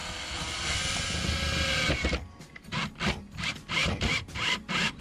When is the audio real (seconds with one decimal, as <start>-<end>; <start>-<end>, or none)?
0.0-3.8